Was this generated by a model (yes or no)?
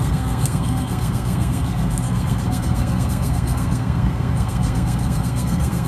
yes